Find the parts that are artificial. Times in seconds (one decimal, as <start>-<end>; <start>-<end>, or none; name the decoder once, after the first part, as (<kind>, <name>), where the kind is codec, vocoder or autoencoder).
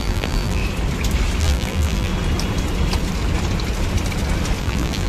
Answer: 0.0-0.6 (vocoder, BigVGAN v2); 1.4-2.1; 4.6-5.1